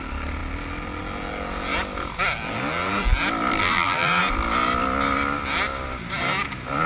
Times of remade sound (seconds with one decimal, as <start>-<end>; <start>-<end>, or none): 3.6-4.2